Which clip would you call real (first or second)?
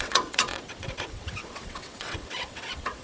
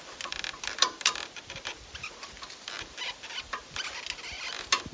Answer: second